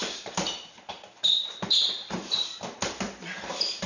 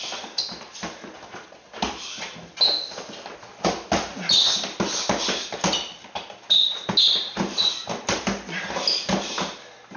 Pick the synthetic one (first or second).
first